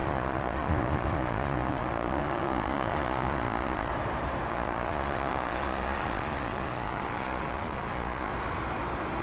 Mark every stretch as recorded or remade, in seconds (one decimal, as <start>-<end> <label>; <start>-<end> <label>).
0.0-3.9 remade; 3.9-4.5 recorded; 4.5-8.3 remade; 8.3-9.2 recorded